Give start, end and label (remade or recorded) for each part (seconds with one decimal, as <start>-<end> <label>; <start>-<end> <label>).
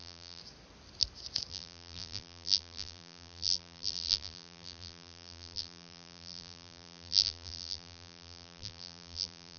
0.0-0.4 remade; 0.4-1.5 recorded; 1.5-9.6 remade